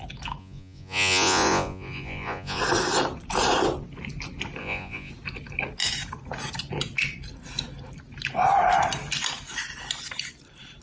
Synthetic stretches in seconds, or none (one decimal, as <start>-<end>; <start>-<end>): 0.4-2.6; 4.6-5.1